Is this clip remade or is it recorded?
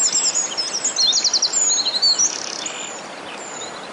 recorded